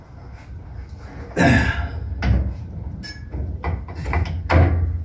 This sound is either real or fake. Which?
real